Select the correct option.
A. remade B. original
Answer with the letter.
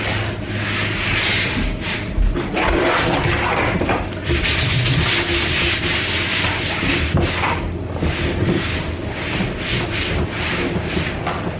B